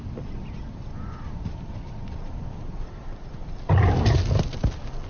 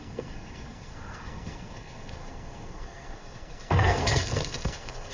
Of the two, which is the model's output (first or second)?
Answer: second